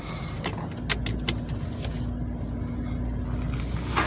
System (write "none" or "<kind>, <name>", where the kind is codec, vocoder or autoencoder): none